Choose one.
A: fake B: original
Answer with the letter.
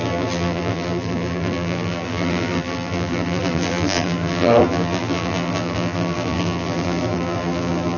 A